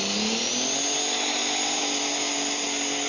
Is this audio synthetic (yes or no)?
no